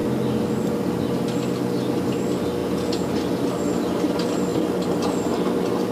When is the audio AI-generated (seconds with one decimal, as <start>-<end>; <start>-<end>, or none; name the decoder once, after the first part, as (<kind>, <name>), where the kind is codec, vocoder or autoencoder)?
2.6-3.1 (vocoder, Vocos)